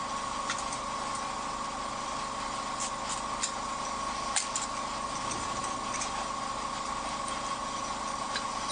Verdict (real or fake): real